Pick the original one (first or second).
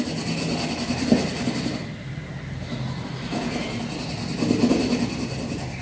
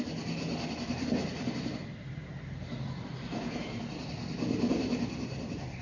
first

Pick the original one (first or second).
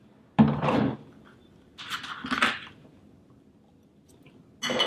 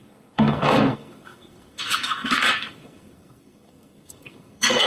first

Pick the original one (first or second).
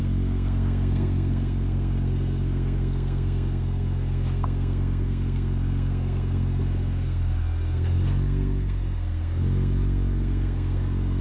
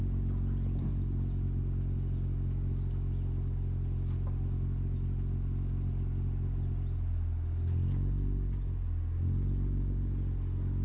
second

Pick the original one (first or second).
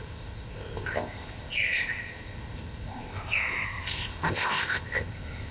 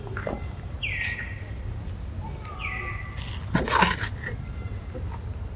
second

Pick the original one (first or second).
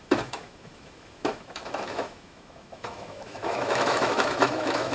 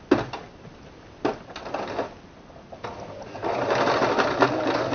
second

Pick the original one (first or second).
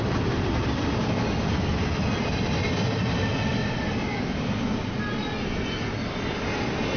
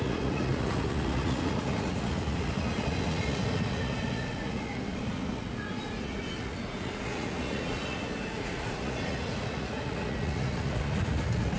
first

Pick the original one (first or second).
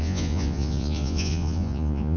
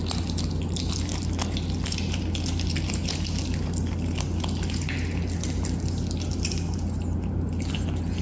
second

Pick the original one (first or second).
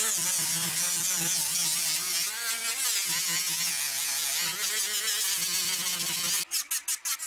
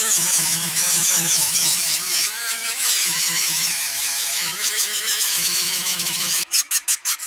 first